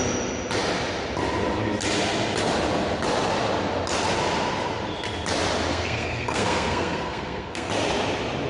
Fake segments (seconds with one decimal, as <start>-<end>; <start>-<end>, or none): 5.7-7.7